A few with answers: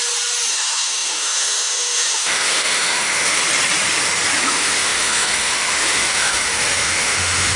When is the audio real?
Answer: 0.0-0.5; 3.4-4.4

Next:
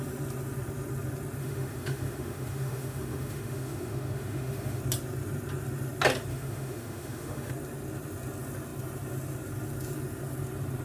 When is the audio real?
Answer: 0.0-1.4; 4.8-6.3; 7.5-10.8

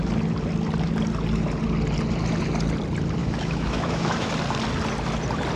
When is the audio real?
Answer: 0.0-3.2; 4.3-5.6

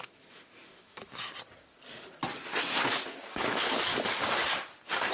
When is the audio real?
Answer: 1.3-3.3; 3.9-5.1

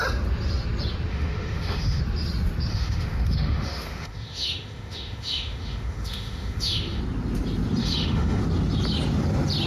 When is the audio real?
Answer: 0.0-1.1; 2.0-2.7; 7.0-7.8; 8.4-9.7

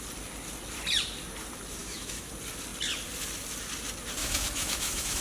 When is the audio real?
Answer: 0.0-1.8; 2.3-4.2

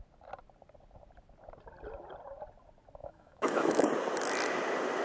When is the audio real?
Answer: 0.0-3.0; 3.9-5.0

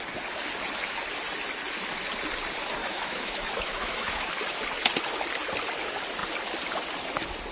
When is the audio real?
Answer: 0.0-2.8; 4.3-7.5